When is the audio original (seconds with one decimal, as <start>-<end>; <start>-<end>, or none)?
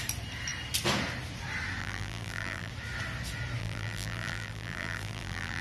0.0-1.8; 2.7-3.6